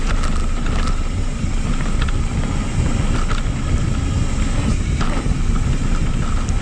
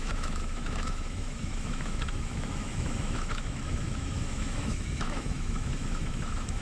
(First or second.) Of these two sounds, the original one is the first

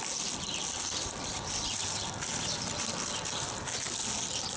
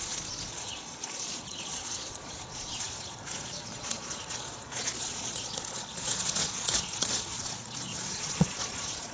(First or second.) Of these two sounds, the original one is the first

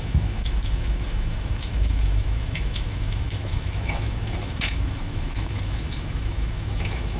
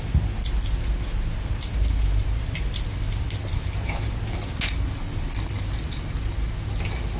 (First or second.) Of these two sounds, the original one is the second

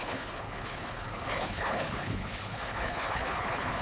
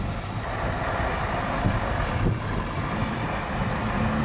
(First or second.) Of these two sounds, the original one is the second